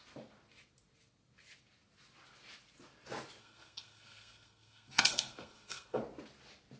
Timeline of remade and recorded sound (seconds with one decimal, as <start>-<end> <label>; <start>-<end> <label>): 0.0-3.4 recorded; 3.4-6.0 remade; 6.0-6.8 recorded